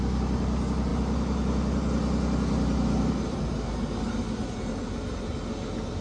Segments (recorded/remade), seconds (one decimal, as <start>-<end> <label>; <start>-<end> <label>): 0.0-6.0 recorded